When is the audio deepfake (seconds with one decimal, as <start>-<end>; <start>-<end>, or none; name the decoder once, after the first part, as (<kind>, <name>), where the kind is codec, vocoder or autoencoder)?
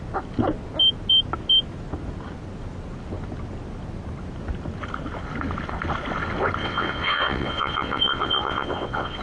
6.6-9.2 (vocoder, WaveNeXt)